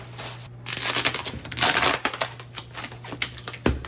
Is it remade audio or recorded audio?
recorded